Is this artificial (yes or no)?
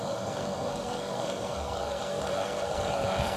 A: yes